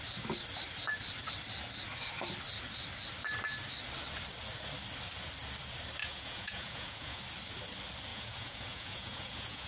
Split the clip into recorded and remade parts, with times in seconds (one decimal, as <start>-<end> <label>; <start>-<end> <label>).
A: 0.0-6.0 recorded; 6.0-7.2 remade; 7.2-8.1 recorded; 8.1-9.7 remade